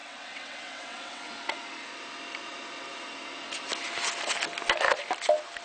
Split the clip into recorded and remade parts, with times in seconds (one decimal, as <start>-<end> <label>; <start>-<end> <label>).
0.0-1.3 remade; 1.3-5.6 recorded